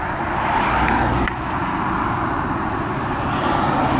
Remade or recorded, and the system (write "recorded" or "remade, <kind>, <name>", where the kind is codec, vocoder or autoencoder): recorded